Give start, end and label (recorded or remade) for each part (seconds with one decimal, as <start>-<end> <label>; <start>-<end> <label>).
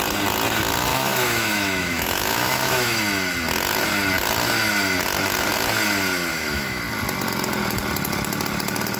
0.0-0.9 recorded; 0.9-3.0 remade; 3.0-6.3 recorded; 6.3-6.8 remade; 6.8-9.0 recorded